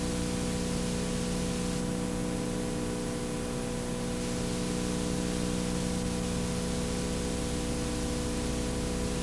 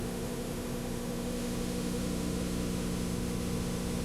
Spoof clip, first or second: second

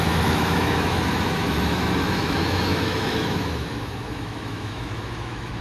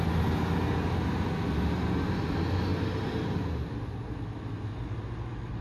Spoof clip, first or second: first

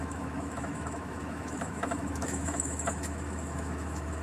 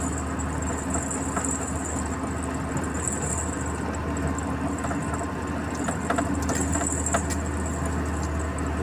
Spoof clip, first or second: first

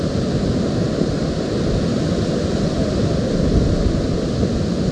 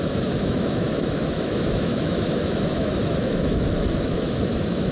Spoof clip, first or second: second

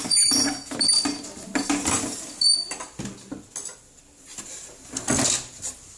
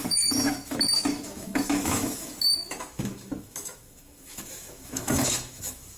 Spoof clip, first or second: second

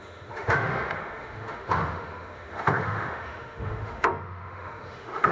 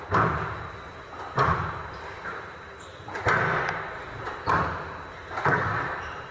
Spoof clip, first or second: first